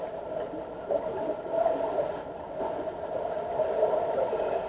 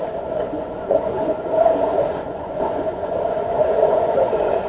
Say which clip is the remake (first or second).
second